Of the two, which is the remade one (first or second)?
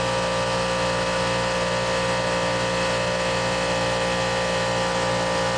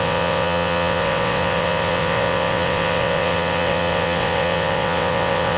second